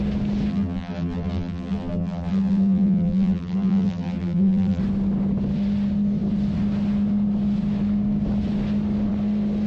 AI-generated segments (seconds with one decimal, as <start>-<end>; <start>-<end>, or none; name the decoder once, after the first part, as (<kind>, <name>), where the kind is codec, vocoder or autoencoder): 0.5-4.8 (vocoder, BigVGAN v2)